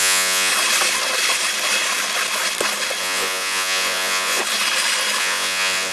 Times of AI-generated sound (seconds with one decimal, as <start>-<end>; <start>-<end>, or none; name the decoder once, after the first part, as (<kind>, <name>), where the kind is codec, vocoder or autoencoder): 0.0-0.5 (vocoder, Vocos); 3.0-4.4; 5.2-5.9

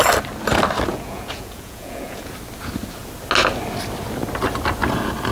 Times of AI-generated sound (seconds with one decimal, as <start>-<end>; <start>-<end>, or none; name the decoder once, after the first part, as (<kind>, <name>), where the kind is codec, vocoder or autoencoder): 0.9-2.3 (vocoder, Vocos)

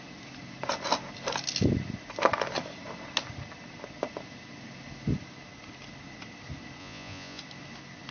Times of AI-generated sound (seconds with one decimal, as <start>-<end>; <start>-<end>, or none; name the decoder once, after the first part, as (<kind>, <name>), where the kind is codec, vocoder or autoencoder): 6.8-7.4 (vocoder, Vocos)

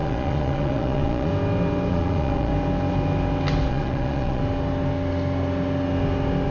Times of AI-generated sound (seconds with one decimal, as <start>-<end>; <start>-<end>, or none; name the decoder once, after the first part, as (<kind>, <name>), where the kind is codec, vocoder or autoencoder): 0.0-1.3 (vocoder, Vocos); 1.9-2.5; 3.7-4.4

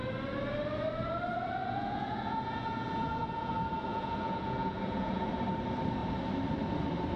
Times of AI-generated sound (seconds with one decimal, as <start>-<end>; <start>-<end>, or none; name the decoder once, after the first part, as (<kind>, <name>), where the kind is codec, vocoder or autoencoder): 1.6-3.5 (vocoder, Vocos); 3.9-5.3

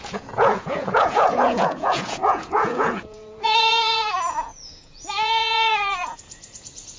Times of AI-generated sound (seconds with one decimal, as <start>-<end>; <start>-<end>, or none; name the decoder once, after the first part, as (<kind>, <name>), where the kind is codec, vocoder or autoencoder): 0.0-7.0 (vocoder, Vocos)

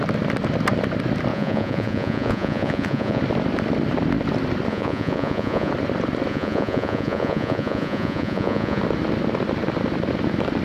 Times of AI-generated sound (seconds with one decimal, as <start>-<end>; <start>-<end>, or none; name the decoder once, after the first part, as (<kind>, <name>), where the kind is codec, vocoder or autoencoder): 1.3-3.2 (vocoder, Vocos); 4.7-5.7; 6.3-8.8